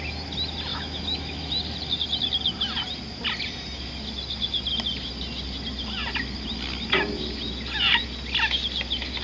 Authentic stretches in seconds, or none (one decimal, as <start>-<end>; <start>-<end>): 0.0-0.7; 1.5-9.2